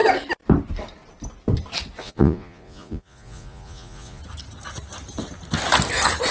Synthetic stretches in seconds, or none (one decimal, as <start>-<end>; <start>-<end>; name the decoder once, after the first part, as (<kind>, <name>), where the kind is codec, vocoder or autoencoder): 2.0-4.2 (vocoder, Vocos)